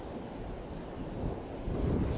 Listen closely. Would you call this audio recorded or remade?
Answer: recorded